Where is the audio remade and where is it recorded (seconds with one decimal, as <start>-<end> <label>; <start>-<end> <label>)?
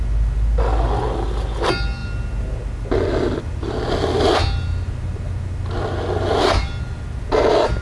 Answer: 0.0-7.8 recorded